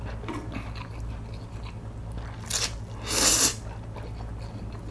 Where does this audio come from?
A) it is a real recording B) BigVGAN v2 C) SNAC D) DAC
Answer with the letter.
A